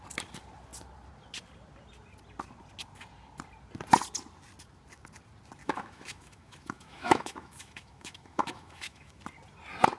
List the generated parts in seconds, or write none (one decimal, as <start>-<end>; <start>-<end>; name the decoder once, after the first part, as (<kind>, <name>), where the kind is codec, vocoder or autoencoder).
5.6-9.2 (autoencoder, DAC-VAE)